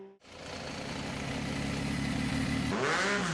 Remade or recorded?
recorded